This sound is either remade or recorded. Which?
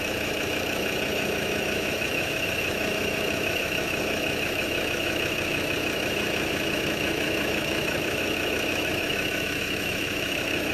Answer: remade